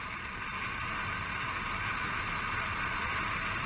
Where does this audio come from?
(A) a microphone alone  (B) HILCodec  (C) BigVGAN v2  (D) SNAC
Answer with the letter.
A